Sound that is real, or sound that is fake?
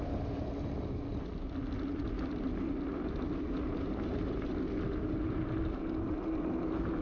real